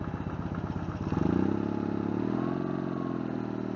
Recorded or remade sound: recorded